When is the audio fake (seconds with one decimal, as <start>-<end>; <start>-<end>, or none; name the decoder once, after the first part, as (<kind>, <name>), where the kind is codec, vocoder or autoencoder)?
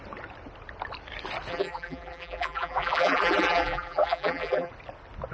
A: 1.5-4.7 (vocoder, BigVGAN v2)